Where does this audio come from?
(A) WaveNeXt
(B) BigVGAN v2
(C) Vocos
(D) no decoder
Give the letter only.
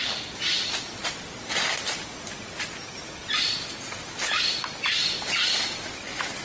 D